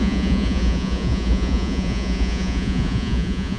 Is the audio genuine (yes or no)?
no